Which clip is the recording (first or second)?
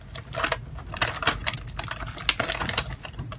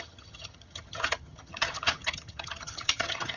first